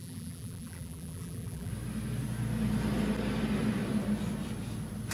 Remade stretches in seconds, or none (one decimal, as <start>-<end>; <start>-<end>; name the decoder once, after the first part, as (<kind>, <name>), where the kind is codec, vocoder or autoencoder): 0.0-1.7 (vocoder, BigVGAN v2)